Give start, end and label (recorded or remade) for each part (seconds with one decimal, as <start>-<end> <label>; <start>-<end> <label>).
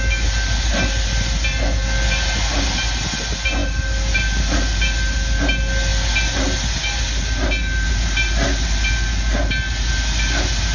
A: 0.0-10.7 recorded